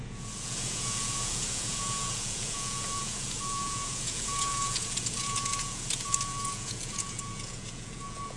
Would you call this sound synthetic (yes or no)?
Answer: yes